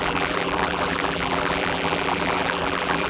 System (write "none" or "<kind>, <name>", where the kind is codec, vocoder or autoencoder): vocoder, BigVGAN v2